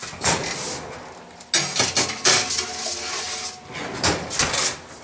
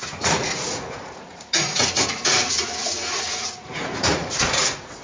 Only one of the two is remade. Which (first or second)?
second